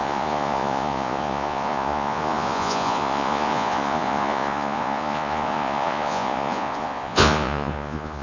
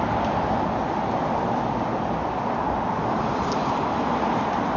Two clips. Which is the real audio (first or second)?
second